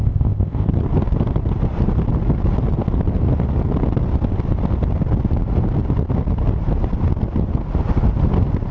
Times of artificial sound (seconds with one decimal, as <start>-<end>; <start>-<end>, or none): 0.0-0.7

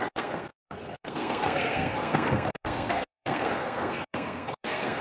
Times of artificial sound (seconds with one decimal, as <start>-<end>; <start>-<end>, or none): 0.0-5.0

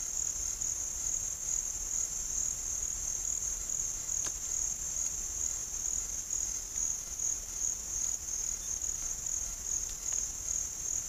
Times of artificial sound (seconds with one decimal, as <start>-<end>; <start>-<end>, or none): none

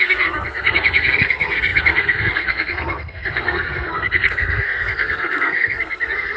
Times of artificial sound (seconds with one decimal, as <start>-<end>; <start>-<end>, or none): 0.0-6.4

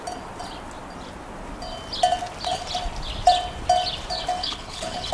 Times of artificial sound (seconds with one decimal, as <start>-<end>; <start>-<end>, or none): 4.4-5.1

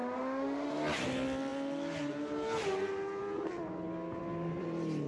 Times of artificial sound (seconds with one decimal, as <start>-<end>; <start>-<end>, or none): 0.0-0.7

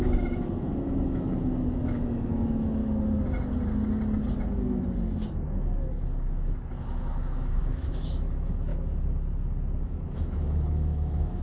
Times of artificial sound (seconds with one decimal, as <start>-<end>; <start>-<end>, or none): 0.0-2.8; 6.8-8.7; 9.8-11.4